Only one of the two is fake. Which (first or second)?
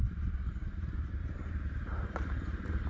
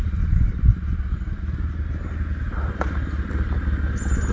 first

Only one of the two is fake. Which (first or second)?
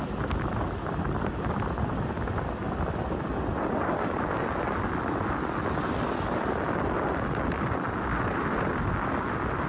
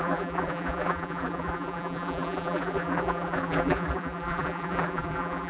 second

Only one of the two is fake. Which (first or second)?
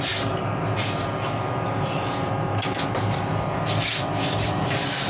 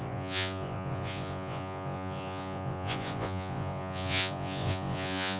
second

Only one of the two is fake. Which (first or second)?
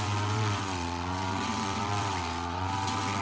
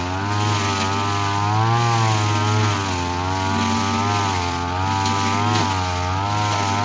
first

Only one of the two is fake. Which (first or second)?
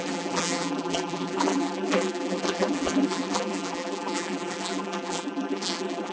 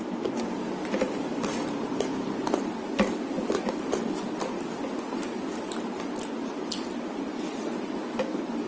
first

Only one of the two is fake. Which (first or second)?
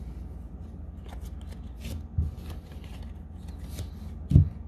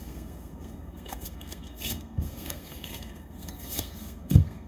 second